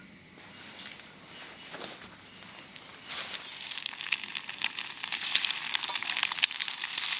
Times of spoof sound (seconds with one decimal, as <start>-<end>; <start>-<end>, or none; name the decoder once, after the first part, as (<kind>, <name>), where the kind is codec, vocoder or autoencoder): none